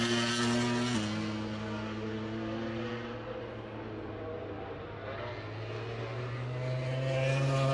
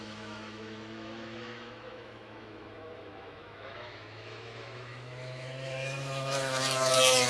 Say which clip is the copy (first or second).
second